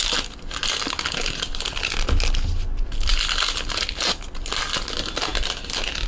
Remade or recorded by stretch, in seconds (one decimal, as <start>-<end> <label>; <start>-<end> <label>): 0.0-6.1 recorded